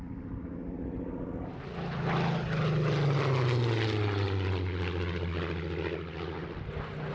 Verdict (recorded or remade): recorded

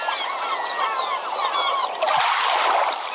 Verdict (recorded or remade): recorded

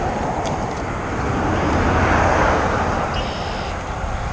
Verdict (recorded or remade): recorded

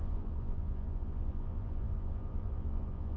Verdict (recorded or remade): remade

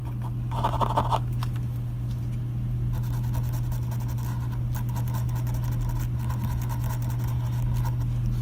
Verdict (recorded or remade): recorded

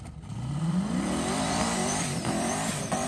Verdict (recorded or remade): remade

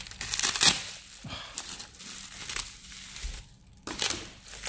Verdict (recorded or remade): recorded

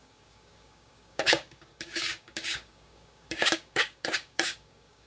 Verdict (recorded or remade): remade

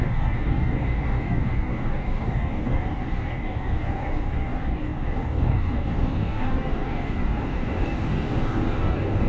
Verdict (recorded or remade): remade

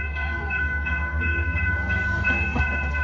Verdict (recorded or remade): remade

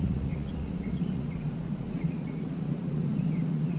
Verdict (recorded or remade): remade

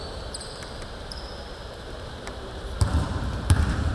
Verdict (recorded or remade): remade